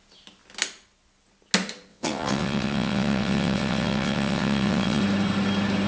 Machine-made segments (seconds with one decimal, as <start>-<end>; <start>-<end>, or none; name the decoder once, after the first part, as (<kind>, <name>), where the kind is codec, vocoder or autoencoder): 1.9-5.0 (vocoder, WaveNeXt)